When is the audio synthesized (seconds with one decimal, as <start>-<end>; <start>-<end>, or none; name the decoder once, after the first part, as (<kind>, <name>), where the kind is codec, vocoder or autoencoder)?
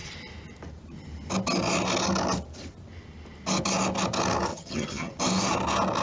4.5-5.1 (vocoder, HiFi-GAN)